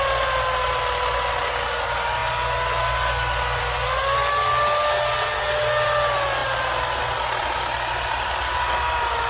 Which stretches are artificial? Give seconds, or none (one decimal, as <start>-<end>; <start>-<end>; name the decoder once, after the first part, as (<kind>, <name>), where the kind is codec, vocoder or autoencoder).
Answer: 6.4-7.0 (vocoder, BigVGAN v2)

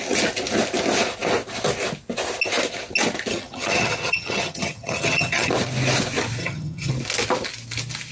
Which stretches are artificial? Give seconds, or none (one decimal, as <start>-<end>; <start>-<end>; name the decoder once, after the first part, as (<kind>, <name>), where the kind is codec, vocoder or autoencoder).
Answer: 3.3-5.5 (vocoder, HiFi-GAN); 6.4-6.9